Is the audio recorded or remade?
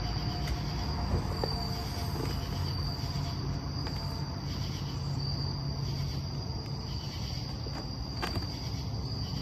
recorded